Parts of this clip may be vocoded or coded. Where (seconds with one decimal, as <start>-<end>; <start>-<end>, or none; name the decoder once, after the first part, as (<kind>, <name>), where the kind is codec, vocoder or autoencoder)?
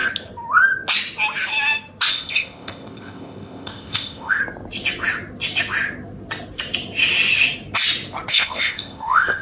2.1-4.4 (codec, ZipCodec); 8.3-9.4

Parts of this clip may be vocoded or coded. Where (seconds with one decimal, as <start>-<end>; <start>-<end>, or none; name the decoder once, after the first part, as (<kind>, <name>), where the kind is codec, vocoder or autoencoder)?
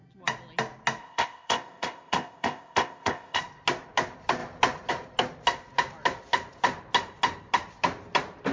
1.0-3.4 (codec, ZipCodec)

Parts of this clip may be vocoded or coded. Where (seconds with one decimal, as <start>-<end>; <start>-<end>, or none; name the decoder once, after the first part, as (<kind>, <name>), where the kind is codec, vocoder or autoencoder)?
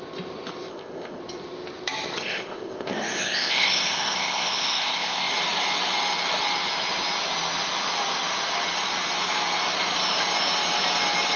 0.7-1.2 (codec, ZipCodec); 2.2-5.3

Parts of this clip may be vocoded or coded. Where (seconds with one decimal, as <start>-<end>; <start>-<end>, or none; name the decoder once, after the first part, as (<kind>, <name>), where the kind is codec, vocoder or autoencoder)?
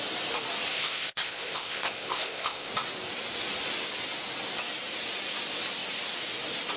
0.7-2.7 (codec, ZipCodec)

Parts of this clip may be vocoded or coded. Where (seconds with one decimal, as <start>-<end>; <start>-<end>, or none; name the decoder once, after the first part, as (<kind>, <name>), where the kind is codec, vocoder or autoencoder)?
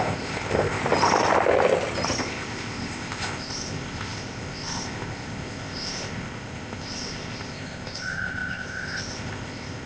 0.0-0.8 (codec, ZipCodec); 2.2-9.9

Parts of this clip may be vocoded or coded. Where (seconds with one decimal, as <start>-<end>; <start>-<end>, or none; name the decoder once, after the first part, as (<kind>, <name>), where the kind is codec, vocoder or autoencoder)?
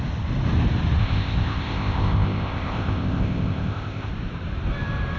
1.0-4.1 (codec, ZipCodec)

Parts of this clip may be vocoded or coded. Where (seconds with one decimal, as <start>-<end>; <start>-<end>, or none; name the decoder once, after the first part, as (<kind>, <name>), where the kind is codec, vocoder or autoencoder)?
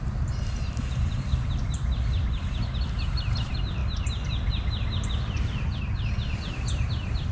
none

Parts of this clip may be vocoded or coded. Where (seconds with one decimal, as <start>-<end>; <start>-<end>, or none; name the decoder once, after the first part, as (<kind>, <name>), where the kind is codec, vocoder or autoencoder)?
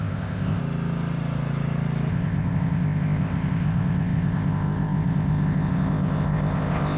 0.0-0.6 (codec, ZipCodec); 2.1-7.0